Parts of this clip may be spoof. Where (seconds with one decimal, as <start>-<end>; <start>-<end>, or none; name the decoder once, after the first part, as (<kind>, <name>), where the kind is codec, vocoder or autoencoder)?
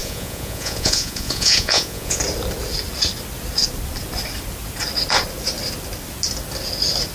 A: 0.0-2.2 (vocoder, Vocos)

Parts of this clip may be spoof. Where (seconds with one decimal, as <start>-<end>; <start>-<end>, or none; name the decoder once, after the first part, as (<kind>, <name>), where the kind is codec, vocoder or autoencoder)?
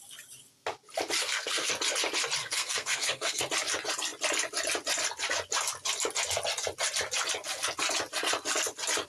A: 1.2-1.7 (codec, SNAC); 2.4-3.4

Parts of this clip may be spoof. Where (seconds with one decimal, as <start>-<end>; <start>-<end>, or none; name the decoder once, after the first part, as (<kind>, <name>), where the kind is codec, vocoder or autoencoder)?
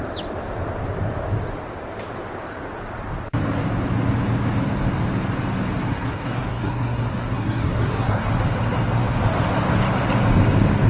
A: 5.9-8.3 (codec, SNAC)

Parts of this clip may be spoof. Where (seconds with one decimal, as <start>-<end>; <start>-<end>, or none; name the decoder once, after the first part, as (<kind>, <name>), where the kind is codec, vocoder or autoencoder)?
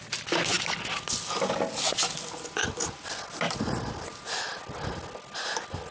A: none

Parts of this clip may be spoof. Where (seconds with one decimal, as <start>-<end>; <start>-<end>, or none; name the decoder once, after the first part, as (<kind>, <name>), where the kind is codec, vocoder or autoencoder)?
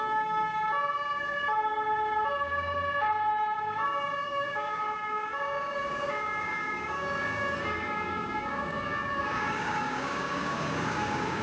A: 0.0-11.4 (codec, DAC)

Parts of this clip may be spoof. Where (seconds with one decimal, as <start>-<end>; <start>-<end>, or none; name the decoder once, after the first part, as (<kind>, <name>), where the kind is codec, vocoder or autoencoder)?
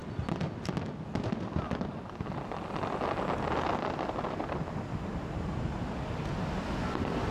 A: none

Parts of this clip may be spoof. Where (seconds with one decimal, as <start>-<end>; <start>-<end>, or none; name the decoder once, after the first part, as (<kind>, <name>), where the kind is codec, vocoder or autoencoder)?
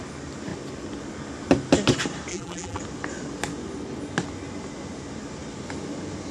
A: 2.3-2.8 (vocoder, BigVGAN v2)